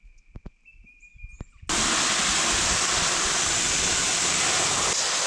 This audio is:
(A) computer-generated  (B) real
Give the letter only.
B